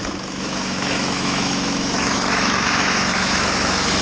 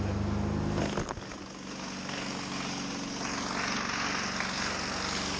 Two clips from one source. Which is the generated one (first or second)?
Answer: first